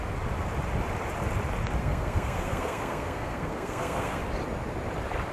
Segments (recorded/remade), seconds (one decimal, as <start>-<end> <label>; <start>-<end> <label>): 0.0-1.8 recorded; 1.8-4.2 remade; 4.2-5.3 recorded